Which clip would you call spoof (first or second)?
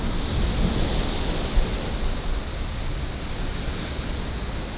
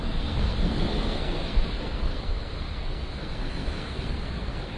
second